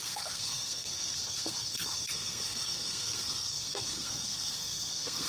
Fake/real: fake